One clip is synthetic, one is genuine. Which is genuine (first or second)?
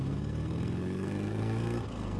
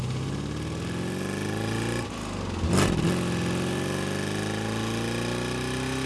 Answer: second